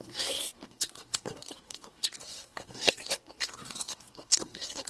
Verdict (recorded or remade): remade